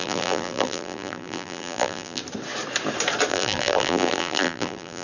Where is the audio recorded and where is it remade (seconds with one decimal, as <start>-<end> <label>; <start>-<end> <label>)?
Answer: 0.0-2.2 remade; 2.2-3.3 recorded; 3.3-5.0 remade